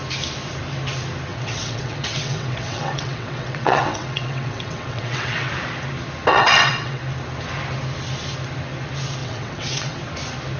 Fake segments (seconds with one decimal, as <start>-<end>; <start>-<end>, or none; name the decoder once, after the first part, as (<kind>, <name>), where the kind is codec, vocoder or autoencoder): 1.3-5.5 (vocoder, WaveNeXt); 6.3-7.0; 9.2-10.0

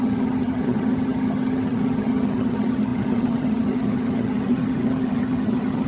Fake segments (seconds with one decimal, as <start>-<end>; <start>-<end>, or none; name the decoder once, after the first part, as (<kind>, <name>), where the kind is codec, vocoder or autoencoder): 0.0-5.9 (vocoder, HiFi-GAN)

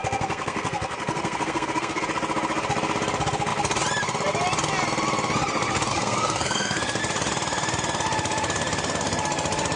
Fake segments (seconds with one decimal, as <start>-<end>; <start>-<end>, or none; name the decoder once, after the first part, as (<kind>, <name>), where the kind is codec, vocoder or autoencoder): 0.0-2.0 (codec, SNAC); 5.9-7.0